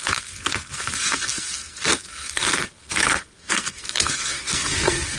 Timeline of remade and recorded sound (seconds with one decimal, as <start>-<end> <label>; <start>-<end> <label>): 0.0-5.2 remade